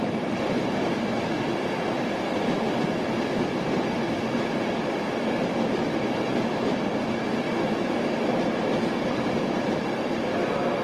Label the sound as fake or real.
fake